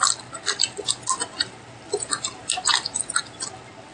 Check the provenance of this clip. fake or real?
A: real